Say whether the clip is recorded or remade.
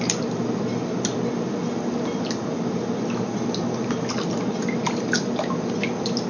recorded